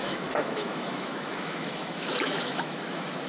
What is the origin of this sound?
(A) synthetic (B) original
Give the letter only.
A